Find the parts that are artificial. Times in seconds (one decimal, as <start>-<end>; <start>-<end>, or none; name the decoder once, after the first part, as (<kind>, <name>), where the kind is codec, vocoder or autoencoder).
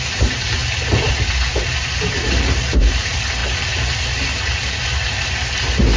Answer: none